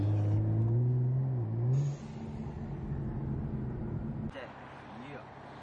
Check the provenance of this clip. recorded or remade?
recorded